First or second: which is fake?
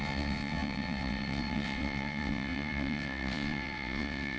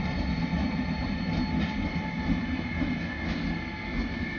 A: first